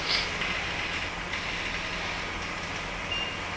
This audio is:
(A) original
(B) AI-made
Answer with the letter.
A